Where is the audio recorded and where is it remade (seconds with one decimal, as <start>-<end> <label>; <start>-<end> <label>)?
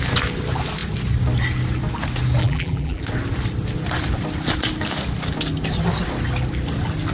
0.0-2.4 recorded; 2.4-3.0 remade; 3.0-7.1 recorded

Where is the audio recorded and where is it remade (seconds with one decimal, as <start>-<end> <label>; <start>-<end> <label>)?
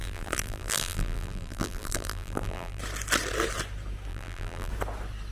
0.0-2.8 remade; 2.8-4.1 recorded; 4.1-4.7 remade; 4.7-5.3 recorded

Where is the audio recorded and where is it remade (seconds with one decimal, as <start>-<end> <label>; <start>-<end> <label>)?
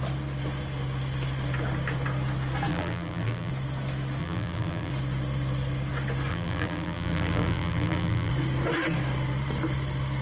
0.0-2.7 recorded; 2.7-3.5 remade; 3.5-4.2 recorded; 4.2-4.9 remade; 4.9-6.3 recorded; 6.3-8.3 remade; 8.3-10.2 recorded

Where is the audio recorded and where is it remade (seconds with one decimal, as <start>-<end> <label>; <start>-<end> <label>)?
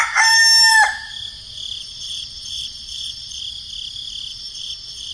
0.0-1.8 recorded; 1.8-3.4 remade; 3.4-4.3 recorded; 4.3-5.1 remade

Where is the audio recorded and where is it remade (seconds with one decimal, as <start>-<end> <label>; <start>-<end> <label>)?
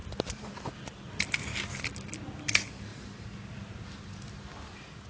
0.0-5.1 recorded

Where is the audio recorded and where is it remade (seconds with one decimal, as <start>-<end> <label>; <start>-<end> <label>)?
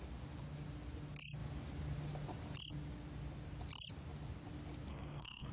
0.0-4.9 recorded; 4.9-5.5 remade